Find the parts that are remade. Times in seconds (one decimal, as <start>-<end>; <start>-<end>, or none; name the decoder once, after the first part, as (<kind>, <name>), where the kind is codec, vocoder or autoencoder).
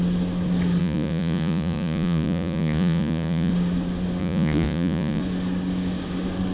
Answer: 0.8-3.5 (vocoder, Vocos); 4.2-5.2